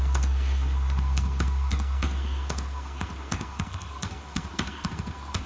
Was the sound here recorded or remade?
remade